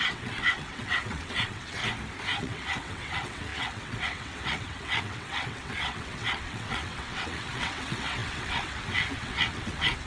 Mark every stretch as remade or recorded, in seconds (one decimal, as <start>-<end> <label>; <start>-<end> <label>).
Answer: 0.0-1.8 remade; 1.8-2.4 recorded; 2.4-10.1 remade